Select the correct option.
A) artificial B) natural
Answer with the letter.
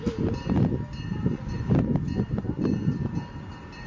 B